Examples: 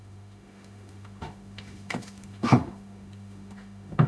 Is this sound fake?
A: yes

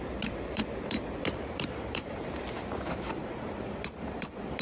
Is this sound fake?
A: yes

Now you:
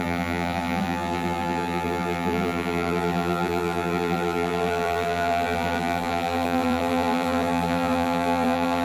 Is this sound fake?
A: yes